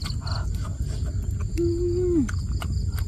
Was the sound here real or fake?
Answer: real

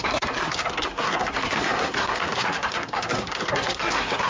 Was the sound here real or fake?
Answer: fake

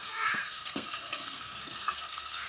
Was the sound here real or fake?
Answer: fake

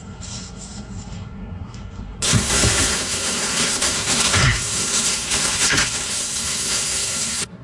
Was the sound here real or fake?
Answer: fake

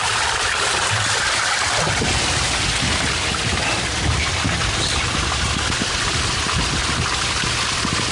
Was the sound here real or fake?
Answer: real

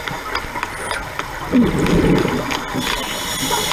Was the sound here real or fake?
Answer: real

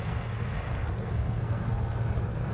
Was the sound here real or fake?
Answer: fake